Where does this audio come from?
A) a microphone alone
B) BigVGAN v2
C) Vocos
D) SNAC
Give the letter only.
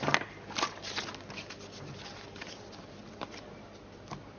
A